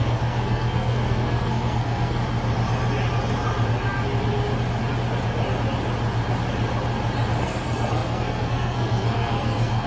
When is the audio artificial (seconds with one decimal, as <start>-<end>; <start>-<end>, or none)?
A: 0.0-2.2; 7.4-9.9